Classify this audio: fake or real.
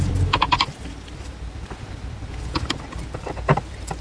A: fake